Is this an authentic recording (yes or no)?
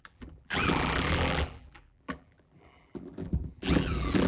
no